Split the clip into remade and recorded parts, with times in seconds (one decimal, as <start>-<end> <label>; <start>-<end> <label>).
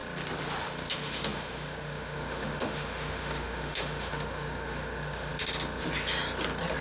0.0-0.9 recorded; 0.9-5.3 remade; 5.3-6.8 recorded